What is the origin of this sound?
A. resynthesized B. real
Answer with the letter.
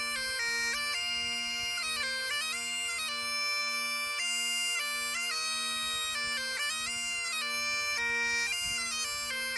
B